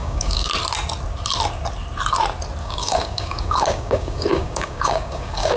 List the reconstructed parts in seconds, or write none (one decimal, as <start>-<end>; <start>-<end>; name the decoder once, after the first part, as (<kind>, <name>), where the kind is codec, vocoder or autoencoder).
0.0-0.5 (codec, DAC); 2.6-5.6